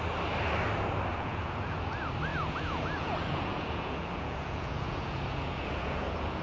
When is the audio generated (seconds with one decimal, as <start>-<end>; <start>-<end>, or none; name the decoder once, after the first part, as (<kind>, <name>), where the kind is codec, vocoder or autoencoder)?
1.1-1.8 (vocoder, Vocos); 2.3-6.4